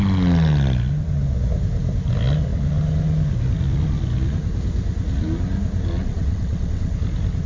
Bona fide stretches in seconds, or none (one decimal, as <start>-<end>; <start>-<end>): 0.0-6.0; 6.9-7.5

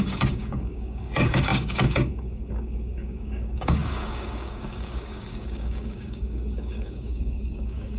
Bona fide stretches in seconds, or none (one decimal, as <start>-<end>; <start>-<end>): none

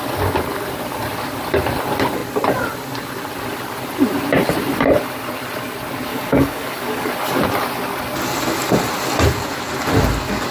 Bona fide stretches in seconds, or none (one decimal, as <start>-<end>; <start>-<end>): 0.0-6.1; 7.1-10.5

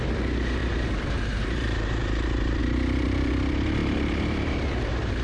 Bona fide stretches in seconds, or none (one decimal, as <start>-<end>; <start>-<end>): 0.0-0.6; 2.6-3.8; 4.6-5.2